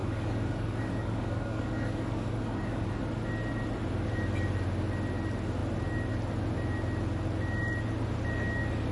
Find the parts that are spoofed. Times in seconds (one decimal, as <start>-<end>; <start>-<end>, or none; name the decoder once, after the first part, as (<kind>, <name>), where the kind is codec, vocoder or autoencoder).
0.0-2.9 (codec, DAC)